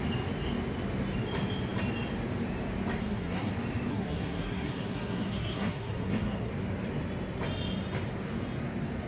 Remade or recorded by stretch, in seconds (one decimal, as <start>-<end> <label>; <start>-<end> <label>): 0.0-3.0 recorded; 3.0-3.5 remade; 3.5-3.9 recorded; 3.9-6.5 remade; 6.5-9.1 recorded